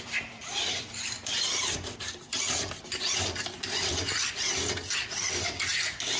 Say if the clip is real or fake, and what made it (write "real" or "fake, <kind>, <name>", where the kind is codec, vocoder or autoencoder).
fake, vocoder, BigVGAN v2